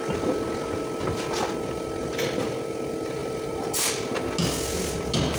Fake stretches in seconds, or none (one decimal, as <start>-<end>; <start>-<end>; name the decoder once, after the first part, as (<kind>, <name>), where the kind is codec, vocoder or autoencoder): 3.2-3.9 (vocoder, BigVGAN v2)